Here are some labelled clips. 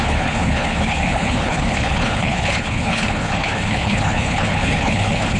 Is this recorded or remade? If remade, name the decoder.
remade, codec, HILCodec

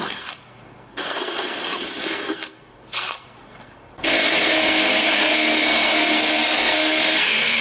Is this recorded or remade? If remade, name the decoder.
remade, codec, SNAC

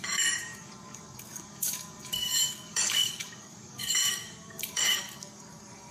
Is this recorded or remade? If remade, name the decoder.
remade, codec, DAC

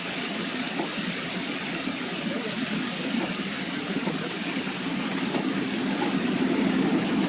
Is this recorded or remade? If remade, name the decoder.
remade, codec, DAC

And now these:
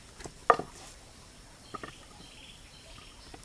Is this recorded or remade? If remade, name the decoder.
recorded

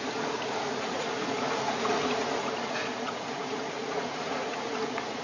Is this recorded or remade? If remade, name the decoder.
remade, vocoder, Vocos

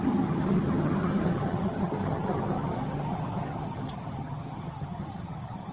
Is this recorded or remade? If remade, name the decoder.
remade, vocoder, HiFi-GAN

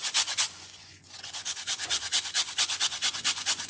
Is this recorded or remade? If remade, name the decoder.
remade, vocoder, Vocos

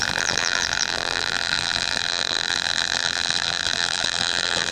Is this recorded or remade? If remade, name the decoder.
remade, vocoder, BigVGAN v2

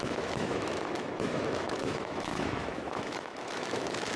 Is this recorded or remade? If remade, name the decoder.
remade, autoencoder, DAC-VAE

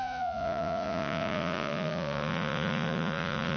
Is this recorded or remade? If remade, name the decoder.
remade, vocoder, Vocos